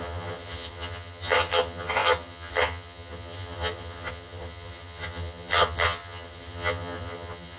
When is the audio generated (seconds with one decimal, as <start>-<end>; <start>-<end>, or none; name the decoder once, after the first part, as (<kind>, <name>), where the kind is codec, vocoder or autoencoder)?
0.0-7.6 (vocoder, HiFi-GAN)